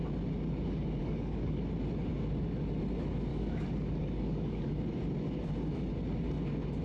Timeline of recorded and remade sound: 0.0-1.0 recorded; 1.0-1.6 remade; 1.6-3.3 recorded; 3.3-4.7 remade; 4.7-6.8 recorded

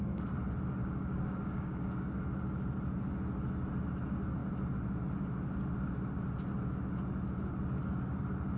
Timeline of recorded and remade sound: 0.0-0.8 recorded; 0.8-2.2 remade; 2.2-8.6 recorded

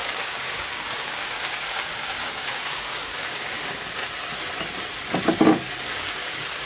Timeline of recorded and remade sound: 0.0-4.0 remade; 4.0-5.8 recorded; 5.8-6.7 remade

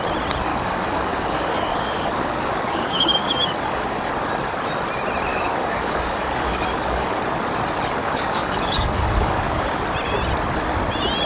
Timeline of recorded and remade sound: 0.0-0.5 recorded; 0.5-4.1 remade; 4.1-5.3 recorded; 5.3-7.2 remade; 7.2-8.0 recorded; 8.0-9.8 remade; 9.8-11.3 recorded

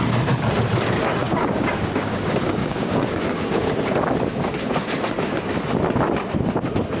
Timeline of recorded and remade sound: 0.0-1.2 recorded; 1.2-2.2 remade; 2.2-2.6 recorded; 2.6-3.7 remade; 3.7-7.0 recorded